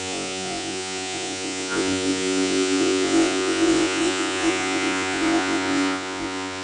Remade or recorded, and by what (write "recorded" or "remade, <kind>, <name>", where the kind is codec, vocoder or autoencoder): remade, vocoder, Vocos